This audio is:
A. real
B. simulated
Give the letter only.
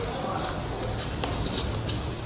A